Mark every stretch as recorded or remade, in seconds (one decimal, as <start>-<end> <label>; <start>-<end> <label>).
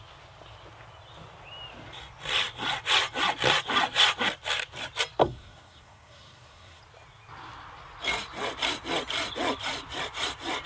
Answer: 0.0-5.2 recorded; 5.2-6.8 remade; 6.8-10.7 recorded